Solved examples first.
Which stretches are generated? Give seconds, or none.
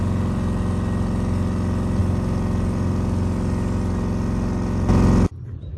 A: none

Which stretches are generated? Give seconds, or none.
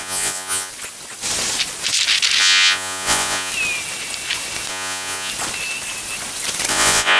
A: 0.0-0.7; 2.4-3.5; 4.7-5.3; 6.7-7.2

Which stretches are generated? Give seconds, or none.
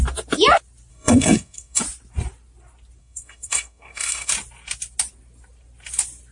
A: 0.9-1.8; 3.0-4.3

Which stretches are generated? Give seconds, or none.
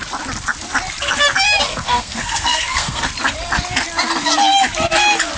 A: 1.7-3.1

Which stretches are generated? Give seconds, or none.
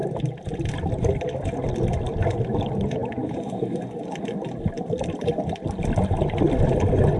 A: none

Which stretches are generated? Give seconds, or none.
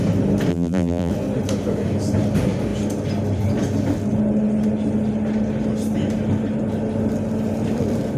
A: 0.5-1.1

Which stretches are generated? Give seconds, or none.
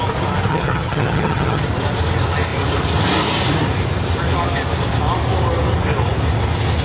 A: 0.5-1.6